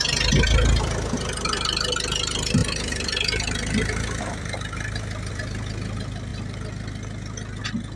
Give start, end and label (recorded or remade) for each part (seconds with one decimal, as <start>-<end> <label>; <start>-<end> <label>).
0.0-8.0 recorded